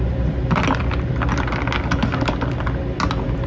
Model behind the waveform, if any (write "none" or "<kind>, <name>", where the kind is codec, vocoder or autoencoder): none